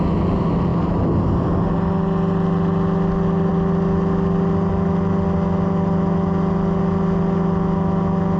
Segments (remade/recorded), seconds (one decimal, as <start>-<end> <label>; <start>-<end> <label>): 0.0-8.4 recorded